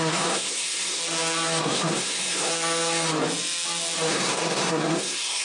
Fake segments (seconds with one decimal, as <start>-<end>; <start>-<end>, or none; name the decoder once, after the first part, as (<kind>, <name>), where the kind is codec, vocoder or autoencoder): 0.0-1.0 (codec, SNAC); 1.6-2.5; 4.1-5.4